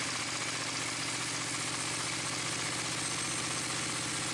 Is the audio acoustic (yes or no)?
yes